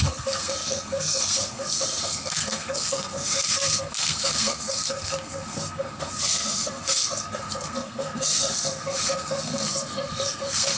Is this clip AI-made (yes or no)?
yes